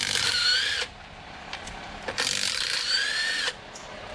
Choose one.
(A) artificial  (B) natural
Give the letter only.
B